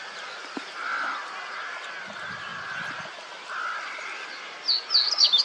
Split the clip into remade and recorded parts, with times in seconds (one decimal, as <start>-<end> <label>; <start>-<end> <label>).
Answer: 0.0-5.4 recorded